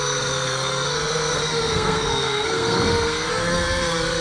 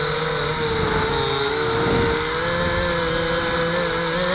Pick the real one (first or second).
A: second